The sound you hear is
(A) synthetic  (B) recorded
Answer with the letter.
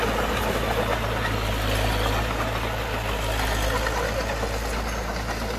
B